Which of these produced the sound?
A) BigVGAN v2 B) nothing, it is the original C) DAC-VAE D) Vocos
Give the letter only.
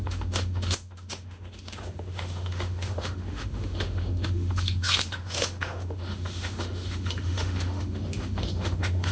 C